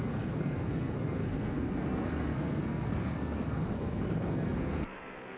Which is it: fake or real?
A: fake